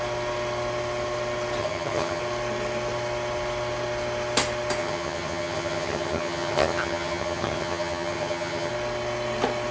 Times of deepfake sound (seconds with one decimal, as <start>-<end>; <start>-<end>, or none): 1.6-2.2; 4.8-8.7